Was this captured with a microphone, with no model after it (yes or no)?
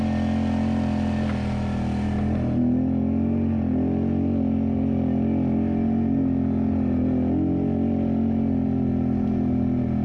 yes